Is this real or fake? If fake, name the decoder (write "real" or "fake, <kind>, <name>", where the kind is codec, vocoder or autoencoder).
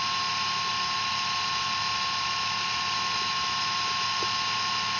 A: real